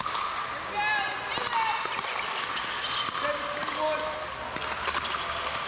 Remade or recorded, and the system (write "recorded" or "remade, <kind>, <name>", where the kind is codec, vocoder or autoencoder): recorded